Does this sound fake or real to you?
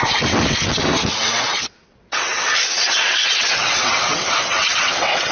fake